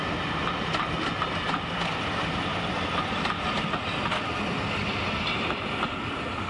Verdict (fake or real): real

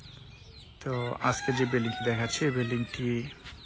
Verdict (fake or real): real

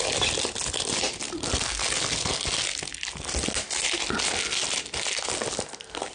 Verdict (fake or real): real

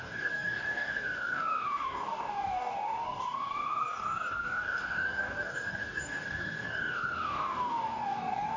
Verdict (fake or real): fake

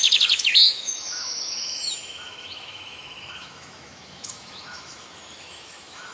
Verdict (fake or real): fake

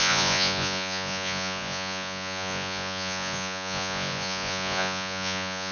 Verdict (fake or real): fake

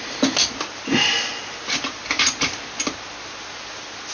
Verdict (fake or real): real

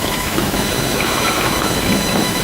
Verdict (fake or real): fake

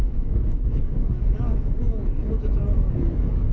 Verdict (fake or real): fake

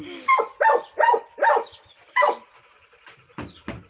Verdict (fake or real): real